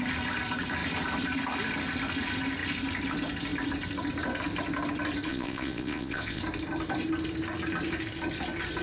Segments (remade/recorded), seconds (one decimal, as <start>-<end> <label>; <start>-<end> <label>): 0.0-5.3 recorded; 5.3-6.4 remade; 6.4-8.8 recorded